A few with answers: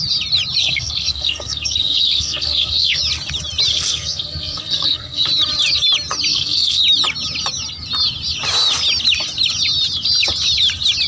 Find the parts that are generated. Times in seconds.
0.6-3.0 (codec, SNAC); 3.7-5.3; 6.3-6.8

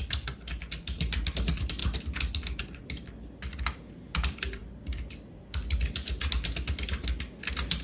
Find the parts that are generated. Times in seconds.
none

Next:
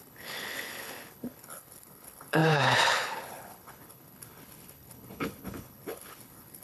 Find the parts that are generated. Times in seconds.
0.0-6.6 (codec, HILCodec)

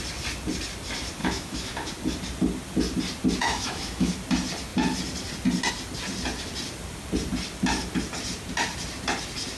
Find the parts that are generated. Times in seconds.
1.2-1.9 (autoencoder, DAC-VAE); 3.4-4.1

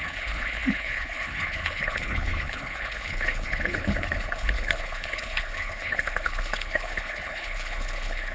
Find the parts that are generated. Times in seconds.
0.0-8.3 (codec, HILCodec)

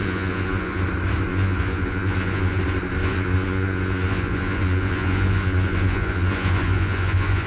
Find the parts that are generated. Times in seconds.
0.0-0.8 (vocoder, Vocos); 1.3-2.6; 3.0-7.5